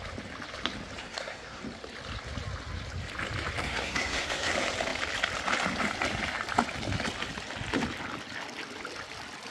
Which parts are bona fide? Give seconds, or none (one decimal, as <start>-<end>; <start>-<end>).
0.0-1.0; 1.6-3.6; 4.5-9.5